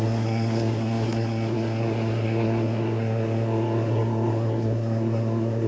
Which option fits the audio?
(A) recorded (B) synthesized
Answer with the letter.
B